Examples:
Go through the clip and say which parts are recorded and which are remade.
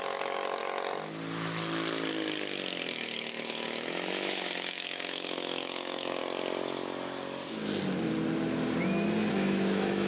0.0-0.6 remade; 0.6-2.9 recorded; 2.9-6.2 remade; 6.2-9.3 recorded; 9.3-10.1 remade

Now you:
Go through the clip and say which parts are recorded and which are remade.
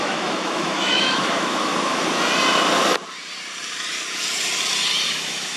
0.0-1.7 remade; 1.7-5.1 recorded; 5.1-5.6 remade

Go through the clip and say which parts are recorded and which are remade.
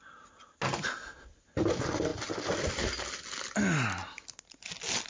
0.0-5.1 recorded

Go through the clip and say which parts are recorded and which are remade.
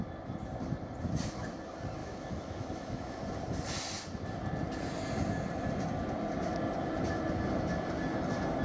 0.0-2.0 recorded; 2.0-3.2 remade; 3.2-8.6 recorded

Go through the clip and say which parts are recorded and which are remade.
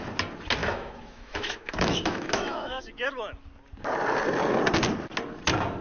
0.0-0.6 recorded; 0.6-2.8 remade; 2.8-5.8 recorded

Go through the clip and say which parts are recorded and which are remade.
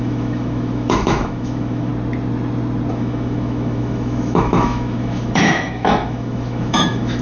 0.0-1.9 remade; 1.9-2.9 recorded; 2.9-7.2 remade